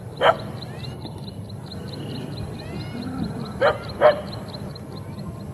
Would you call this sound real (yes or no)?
yes